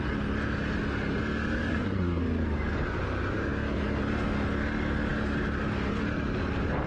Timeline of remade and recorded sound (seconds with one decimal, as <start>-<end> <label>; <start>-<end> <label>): 0.0-1.7 recorded; 1.7-2.2 remade; 2.2-6.9 recorded